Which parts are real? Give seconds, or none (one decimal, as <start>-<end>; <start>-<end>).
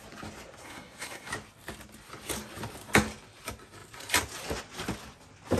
0.0-0.6; 1.3-5.6